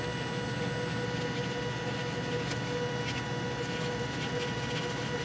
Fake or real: real